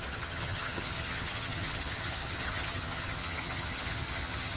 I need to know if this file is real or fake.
fake